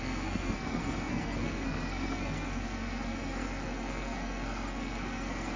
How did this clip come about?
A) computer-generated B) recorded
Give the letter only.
A